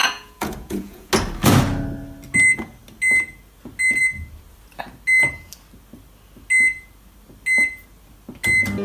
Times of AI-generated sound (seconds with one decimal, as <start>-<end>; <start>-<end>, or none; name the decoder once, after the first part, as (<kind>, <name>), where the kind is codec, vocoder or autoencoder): 0.0-1.1 (vocoder, Vocos)

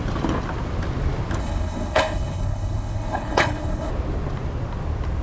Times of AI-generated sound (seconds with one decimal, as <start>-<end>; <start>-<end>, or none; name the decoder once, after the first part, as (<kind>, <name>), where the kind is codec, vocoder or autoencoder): 1.4-3.9 (codec, HILCodec)

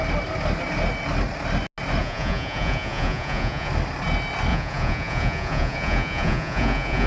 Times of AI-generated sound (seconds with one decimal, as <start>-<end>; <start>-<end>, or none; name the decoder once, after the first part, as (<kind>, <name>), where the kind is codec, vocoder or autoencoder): 2.0-3.7 (vocoder, Vocos); 4.5-7.1